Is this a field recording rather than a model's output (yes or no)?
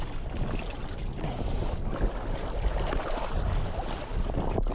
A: yes